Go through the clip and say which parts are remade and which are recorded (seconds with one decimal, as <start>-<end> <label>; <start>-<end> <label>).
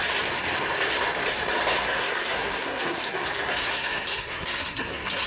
0.0-1.8 recorded; 1.8-5.3 remade